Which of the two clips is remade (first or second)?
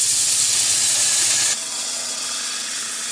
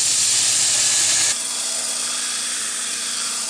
first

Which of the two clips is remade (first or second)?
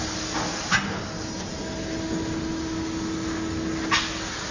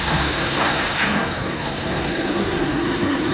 second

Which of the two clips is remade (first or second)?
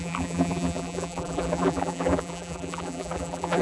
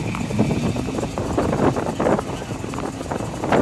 first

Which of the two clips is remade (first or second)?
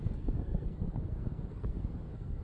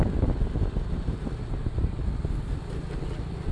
first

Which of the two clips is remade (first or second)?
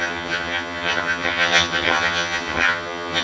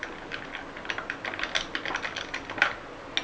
first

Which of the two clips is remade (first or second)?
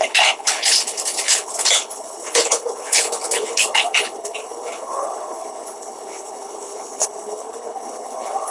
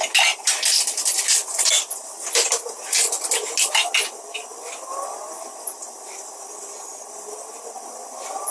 first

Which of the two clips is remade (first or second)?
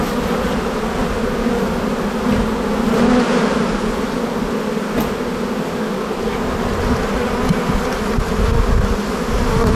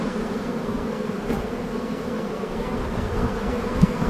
second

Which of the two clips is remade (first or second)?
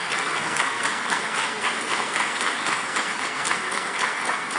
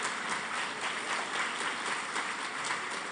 first